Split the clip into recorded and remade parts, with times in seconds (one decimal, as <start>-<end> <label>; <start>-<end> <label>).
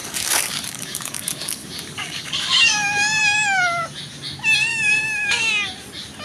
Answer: 0.0-3.2 remade; 3.2-4.7 recorded; 4.7-5.5 remade; 5.5-6.2 recorded